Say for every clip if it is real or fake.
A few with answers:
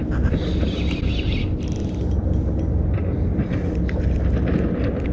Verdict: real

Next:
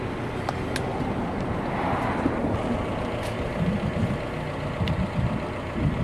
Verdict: real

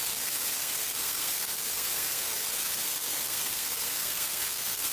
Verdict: fake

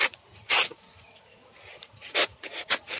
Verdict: fake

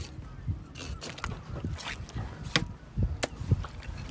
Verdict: real